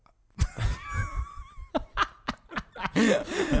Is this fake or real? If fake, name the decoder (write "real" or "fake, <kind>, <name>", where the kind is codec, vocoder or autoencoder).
real